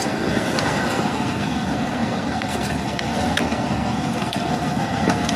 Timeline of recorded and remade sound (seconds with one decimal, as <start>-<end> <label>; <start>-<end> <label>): 0.0-5.4 remade